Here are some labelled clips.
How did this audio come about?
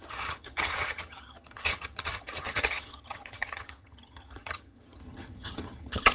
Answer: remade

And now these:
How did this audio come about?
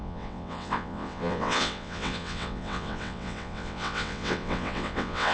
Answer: remade